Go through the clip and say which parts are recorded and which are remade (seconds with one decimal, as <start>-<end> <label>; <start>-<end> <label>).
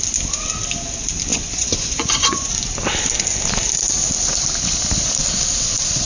0.0-1.3 recorded; 1.3-2.5 remade; 2.5-6.0 recorded